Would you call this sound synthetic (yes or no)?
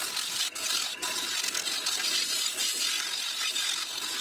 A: no